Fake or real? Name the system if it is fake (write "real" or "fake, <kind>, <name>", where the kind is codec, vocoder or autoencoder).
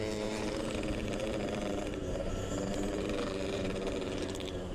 fake, vocoder, BigVGAN v2